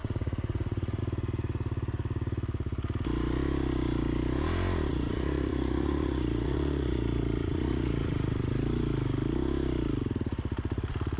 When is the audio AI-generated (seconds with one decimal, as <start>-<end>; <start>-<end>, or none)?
0.0-1.0; 4.9-8.5